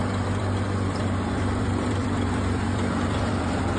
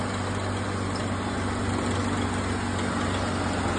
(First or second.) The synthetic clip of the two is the first